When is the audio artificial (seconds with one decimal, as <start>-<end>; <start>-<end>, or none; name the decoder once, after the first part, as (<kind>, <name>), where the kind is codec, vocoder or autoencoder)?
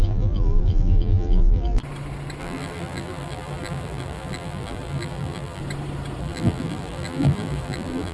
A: 0.0-1.8 (vocoder, BigVGAN v2); 2.4-5.6; 6.2-8.1